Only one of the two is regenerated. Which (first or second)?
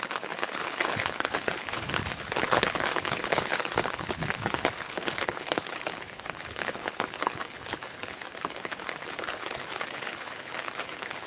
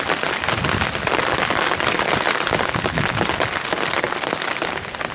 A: first